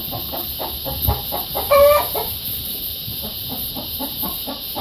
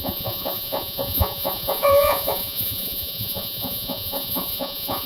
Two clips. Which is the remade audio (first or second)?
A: second